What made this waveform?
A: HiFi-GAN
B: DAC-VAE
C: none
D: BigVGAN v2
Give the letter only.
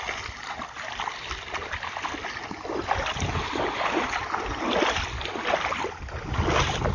C